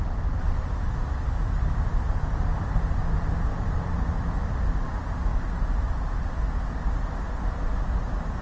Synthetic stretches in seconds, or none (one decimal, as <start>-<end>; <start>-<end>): none